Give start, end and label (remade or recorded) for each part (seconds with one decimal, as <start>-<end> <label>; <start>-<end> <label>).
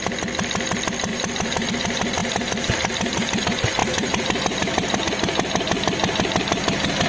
0.0-1.1 recorded; 1.1-1.7 remade; 1.7-2.2 recorded; 2.2-3.4 remade; 3.4-3.8 recorded; 3.8-5.0 remade; 5.0-7.1 recorded